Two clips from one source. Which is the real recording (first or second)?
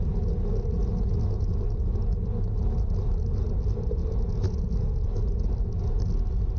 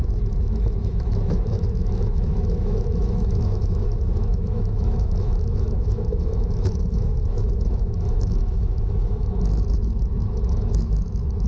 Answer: first